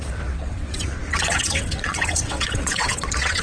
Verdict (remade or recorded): remade